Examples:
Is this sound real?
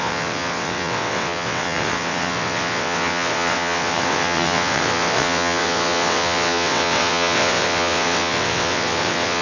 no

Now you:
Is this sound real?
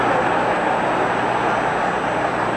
yes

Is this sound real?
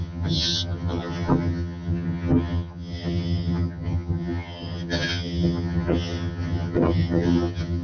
no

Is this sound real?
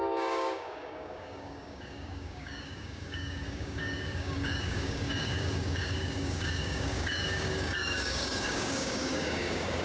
no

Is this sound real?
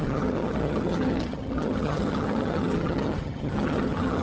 no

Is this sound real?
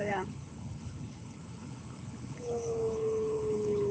no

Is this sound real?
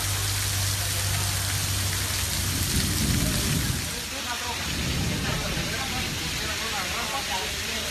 yes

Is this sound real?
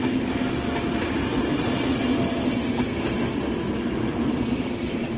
yes